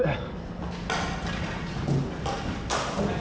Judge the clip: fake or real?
real